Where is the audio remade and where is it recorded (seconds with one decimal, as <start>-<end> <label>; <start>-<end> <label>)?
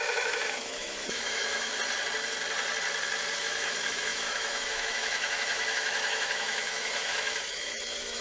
0.0-1.7 remade; 1.7-3.4 recorded; 3.4-8.2 remade